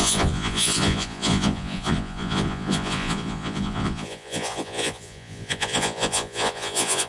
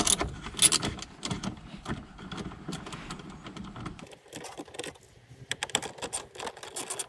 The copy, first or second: first